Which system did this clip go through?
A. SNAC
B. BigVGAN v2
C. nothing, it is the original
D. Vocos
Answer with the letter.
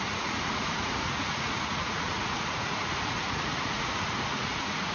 D